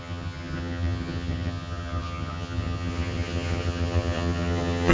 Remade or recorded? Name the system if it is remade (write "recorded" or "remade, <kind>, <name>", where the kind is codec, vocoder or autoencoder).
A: remade, vocoder, HiFi-GAN